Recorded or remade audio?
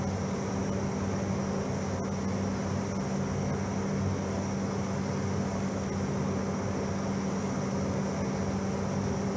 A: recorded